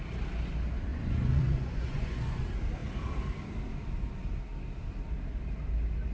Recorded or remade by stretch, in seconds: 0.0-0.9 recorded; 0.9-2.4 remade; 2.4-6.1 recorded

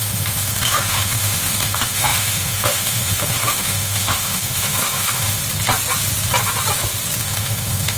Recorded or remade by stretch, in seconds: 0.0-5.4 remade; 5.4-7.2 recorded; 7.2-8.0 remade

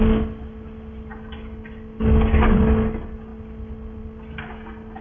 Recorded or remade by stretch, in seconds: 0.0-5.0 recorded

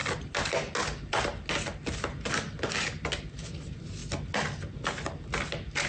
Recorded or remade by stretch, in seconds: 0.0-5.9 recorded

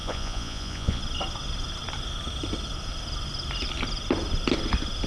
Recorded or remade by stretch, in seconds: 0.0-1.0 remade; 1.0-5.1 recorded

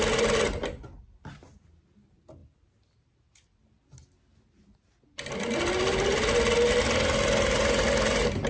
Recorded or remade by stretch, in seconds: 0.0-8.5 recorded

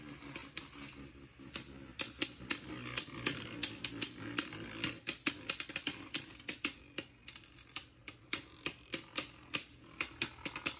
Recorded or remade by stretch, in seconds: 0.0-8.0 recorded; 8.0-9.8 remade; 9.8-10.8 recorded